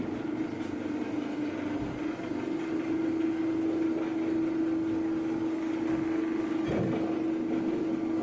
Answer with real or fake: real